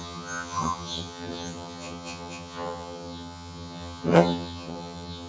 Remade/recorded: remade